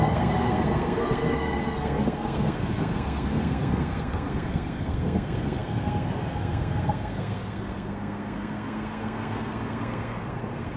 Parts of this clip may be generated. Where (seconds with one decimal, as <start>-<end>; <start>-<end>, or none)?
0.0-10.8